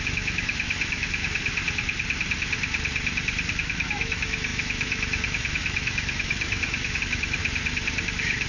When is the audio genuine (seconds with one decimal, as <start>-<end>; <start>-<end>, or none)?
1.5-3.5; 7.4-8.0